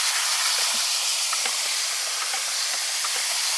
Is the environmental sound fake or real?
real